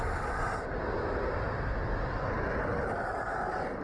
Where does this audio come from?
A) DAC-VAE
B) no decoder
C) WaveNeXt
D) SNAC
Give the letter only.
B